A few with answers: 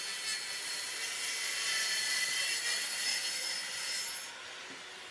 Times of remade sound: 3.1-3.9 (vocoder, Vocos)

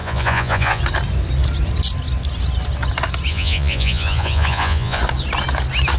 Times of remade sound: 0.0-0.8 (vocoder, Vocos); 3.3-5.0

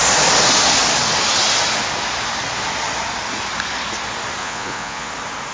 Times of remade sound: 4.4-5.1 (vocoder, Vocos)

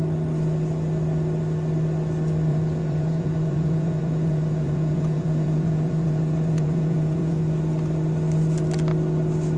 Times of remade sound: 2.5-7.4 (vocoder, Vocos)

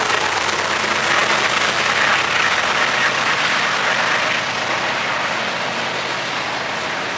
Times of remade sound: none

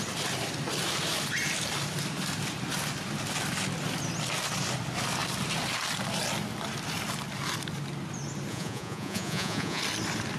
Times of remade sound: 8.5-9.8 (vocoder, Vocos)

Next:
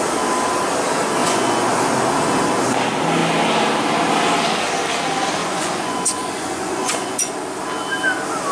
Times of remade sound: 1.2-1.8 (vocoder, Vocos); 5.4-7.3